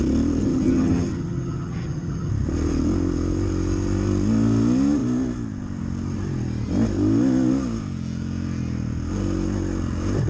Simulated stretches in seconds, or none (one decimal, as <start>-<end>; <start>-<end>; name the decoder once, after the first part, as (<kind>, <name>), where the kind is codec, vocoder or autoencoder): 0.4-2.3 (vocoder, HiFi-GAN)